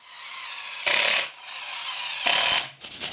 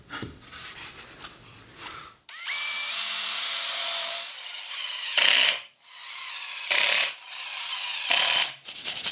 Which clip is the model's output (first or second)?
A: second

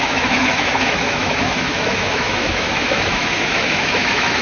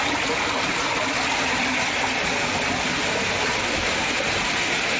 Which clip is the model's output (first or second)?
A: first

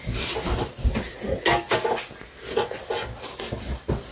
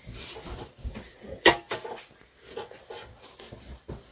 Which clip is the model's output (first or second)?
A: second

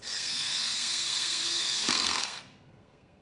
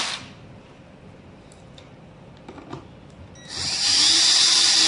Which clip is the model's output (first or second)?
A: first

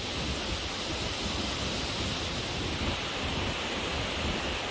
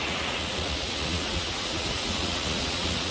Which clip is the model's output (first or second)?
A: second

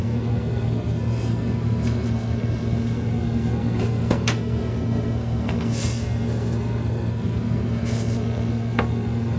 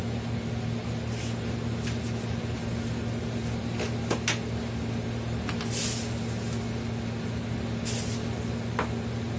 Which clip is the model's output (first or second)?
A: first